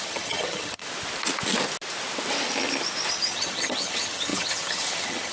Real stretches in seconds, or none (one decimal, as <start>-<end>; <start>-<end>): 0.8-3.1